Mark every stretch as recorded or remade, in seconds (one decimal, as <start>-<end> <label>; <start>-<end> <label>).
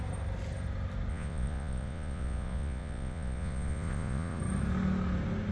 0.0-1.1 recorded; 1.1-4.4 remade; 4.4-5.5 recorded